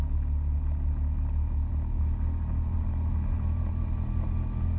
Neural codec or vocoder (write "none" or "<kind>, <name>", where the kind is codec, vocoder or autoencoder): none